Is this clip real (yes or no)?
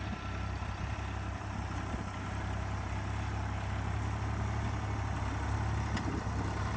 yes